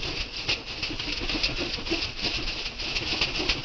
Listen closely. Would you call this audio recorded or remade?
recorded